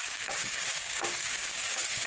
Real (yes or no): no